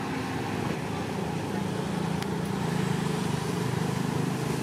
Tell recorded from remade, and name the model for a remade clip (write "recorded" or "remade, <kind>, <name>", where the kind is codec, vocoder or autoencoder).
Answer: recorded